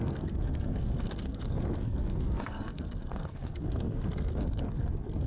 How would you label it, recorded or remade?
remade